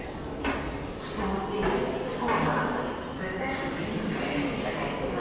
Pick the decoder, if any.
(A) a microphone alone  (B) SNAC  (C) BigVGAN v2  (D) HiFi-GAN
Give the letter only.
A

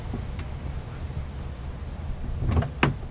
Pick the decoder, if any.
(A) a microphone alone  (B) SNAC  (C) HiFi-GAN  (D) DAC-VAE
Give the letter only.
A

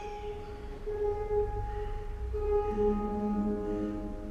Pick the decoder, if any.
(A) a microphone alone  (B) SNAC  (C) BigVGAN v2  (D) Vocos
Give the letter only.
A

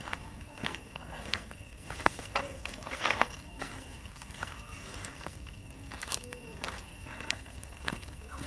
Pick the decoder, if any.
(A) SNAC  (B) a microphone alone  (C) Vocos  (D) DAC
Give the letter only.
A